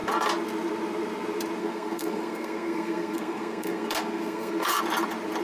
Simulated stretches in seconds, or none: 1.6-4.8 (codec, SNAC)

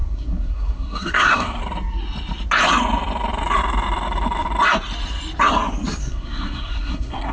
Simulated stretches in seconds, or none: 0.0-1.6 (codec, SNAC); 6.0-7.3

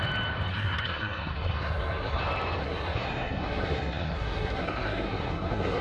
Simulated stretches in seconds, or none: 0.5-2.2 (codec, SNAC); 2.6-5.8

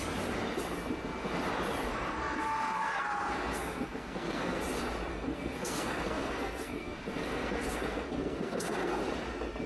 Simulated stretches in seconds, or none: 1.9-4.6 (codec, SNAC); 5.1-9.0

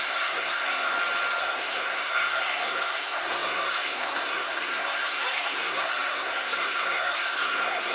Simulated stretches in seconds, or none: 0.0-0.9 (codec, SNAC); 1.4-7.9